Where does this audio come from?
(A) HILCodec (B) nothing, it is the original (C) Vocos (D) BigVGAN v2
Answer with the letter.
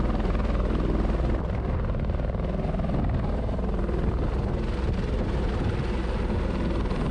B